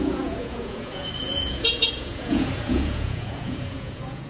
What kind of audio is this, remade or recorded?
remade